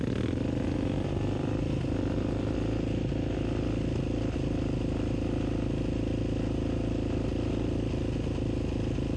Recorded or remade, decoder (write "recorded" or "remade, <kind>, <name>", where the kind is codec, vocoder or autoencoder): recorded